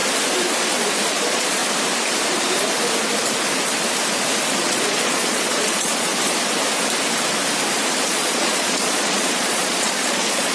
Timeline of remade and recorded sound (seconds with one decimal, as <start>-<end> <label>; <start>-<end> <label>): 0.0-1.1 recorded; 1.1-1.6 remade; 1.6-4.6 recorded; 4.6-6.1 remade; 6.1-8.1 recorded; 8.1-10.5 remade